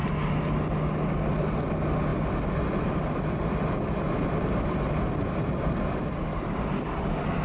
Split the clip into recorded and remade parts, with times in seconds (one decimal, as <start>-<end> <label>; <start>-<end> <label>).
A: 0.0-7.4 recorded